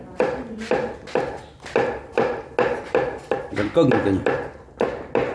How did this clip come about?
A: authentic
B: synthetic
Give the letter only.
A